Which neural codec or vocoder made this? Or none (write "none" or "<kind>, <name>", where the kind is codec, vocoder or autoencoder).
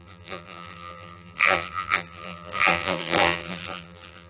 vocoder, BigVGAN v2